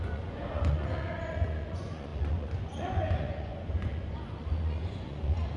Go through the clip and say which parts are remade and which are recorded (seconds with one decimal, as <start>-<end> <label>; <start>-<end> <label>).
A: 0.0-5.6 remade